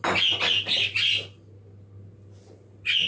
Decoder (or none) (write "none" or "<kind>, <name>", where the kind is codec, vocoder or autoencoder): none